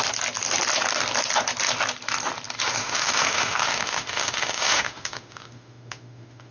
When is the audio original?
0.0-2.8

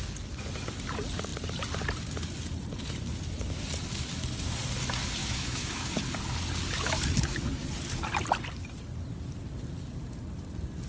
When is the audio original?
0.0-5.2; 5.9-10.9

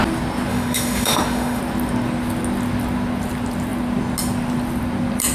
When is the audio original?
0.0-0.5; 1.6-5.3

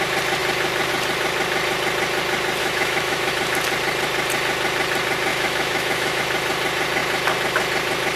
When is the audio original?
0.0-2.6; 3.3-5.3; 6.2-8.2